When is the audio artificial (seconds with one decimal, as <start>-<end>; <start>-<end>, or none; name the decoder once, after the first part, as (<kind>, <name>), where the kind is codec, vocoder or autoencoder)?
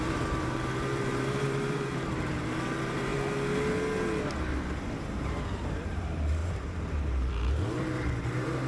0.0-3.1 (vocoder, BigVGAN v2); 4.8-8.7